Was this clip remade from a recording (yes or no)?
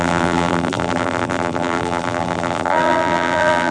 yes